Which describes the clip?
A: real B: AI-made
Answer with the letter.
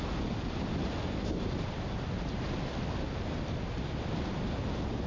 A